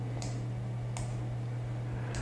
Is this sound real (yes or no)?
yes